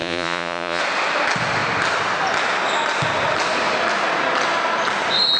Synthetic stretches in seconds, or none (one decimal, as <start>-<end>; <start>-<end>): 0.0-0.8